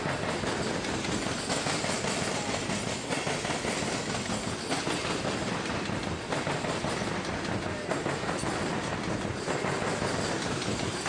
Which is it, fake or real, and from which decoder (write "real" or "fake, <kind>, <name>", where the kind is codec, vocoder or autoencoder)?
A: real